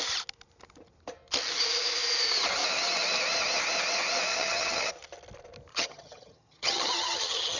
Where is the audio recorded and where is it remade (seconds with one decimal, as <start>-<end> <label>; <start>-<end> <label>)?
0.0-4.3 recorded; 4.3-4.9 remade; 4.9-5.7 recorded; 5.7-7.6 remade